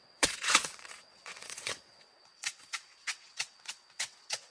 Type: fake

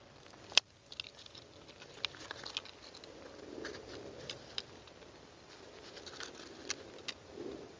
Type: real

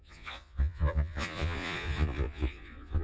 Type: fake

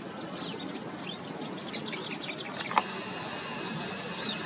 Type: real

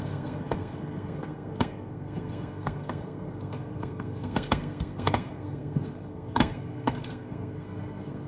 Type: fake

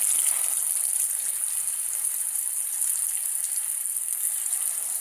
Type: real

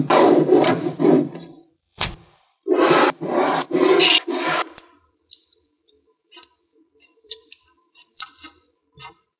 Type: fake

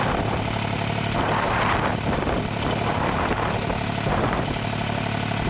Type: real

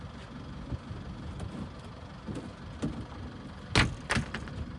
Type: real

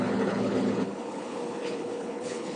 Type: fake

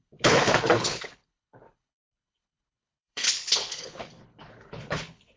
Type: fake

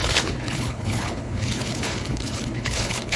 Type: fake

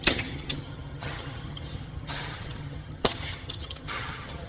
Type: fake